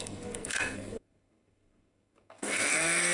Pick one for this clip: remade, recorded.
remade